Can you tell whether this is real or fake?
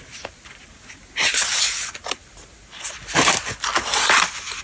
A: real